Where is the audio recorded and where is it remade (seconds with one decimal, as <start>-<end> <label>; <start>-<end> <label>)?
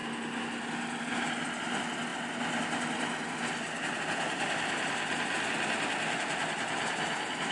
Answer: 0.0-7.5 recorded